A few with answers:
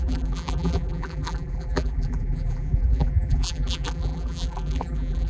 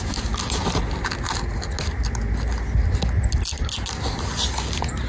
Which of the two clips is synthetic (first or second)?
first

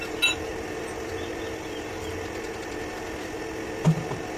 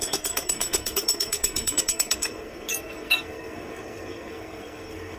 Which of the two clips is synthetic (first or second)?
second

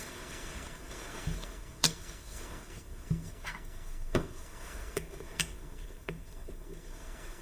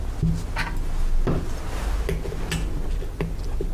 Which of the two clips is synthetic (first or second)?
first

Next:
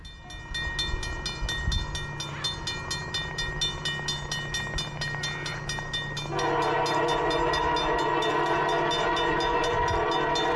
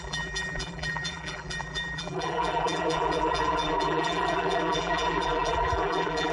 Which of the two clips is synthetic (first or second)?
second